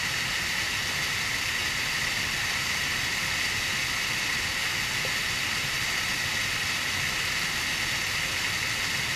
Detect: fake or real real